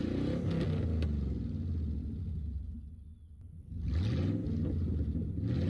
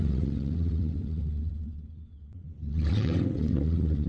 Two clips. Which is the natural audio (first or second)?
first